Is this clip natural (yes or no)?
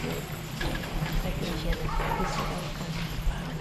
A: no